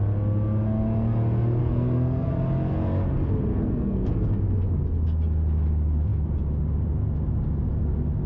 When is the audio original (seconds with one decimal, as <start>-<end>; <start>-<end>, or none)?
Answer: 0.0-1.6; 2.3-3.5; 4.1-8.3